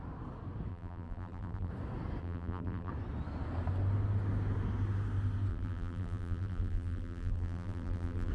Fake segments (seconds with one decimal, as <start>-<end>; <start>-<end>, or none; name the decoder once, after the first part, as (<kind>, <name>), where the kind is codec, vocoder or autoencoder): 0.7-1.7 (vocoder, BigVGAN v2); 2.2-2.9; 5.5-8.3